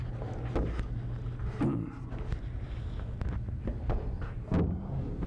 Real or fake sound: real